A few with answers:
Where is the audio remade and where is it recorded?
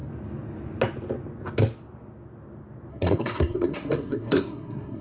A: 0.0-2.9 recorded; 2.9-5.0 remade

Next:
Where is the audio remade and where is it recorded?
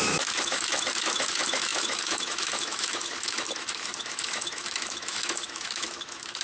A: 0.0-6.4 remade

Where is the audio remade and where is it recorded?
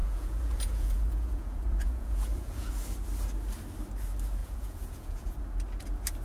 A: 0.0-2.7 remade; 2.7-4.4 recorded; 4.4-5.4 remade; 5.4-6.2 recorded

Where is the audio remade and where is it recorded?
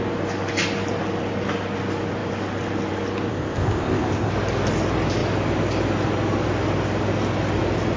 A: 0.0-3.3 recorded; 3.3-4.3 remade; 4.3-8.0 recorded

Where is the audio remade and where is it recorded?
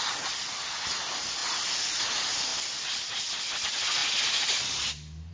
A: 0.0-5.3 recorded